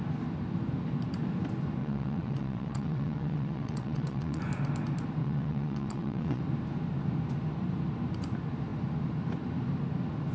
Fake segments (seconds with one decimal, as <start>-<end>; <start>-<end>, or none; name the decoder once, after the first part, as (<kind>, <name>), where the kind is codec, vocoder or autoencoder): 1.8-4.4 (vocoder, WaveNeXt); 5.2-6.4